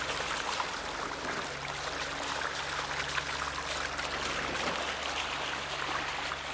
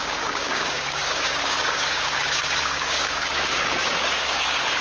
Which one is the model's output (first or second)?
second